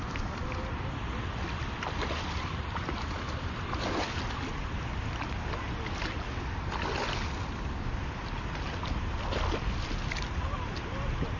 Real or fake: real